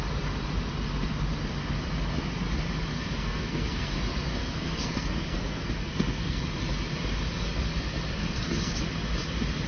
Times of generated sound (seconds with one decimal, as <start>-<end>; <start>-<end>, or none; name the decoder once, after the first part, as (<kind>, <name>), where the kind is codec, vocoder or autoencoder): 2.9-4.0 (codec, SNAC); 4.4-6.4; 8.2-8.8